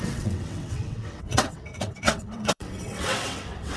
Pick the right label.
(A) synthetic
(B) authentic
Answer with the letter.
A